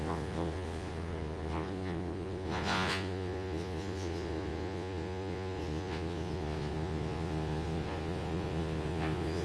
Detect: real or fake fake